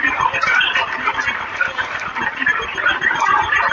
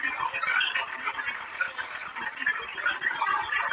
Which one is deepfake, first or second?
first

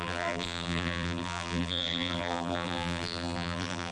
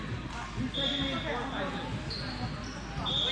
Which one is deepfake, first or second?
first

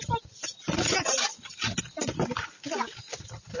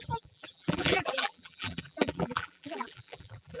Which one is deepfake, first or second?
second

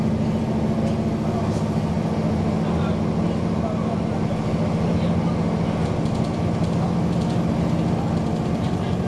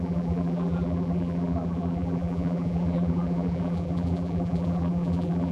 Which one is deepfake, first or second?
second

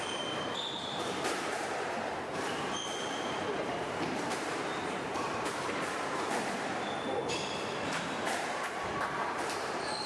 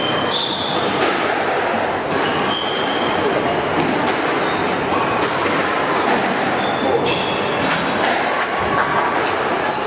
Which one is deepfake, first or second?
first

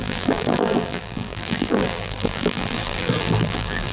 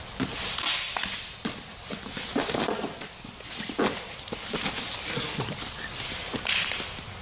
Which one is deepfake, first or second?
first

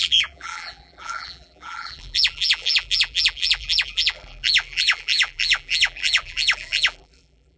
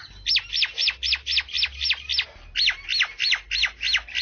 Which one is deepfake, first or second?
first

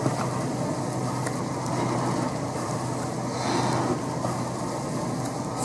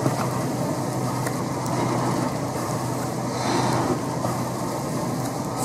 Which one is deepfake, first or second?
second